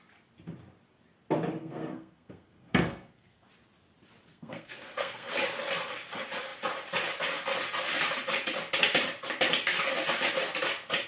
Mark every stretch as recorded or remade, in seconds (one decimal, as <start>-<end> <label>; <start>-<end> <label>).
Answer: 0.0-1.6 recorded; 1.6-3.5 remade; 3.5-4.3 recorded; 4.3-5.3 remade; 5.3-11.1 recorded